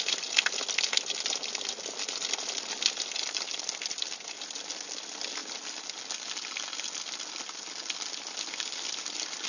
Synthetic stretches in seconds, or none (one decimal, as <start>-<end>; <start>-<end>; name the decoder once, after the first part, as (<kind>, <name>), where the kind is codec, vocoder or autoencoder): none